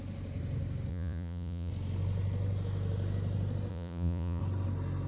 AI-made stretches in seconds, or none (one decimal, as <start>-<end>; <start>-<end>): 0.9-1.7; 3.7-4.4